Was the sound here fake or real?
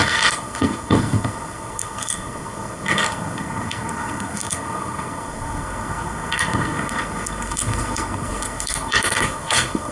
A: fake